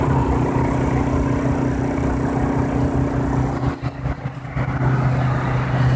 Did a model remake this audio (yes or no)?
no